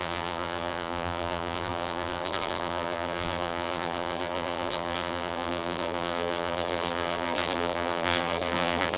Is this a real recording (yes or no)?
no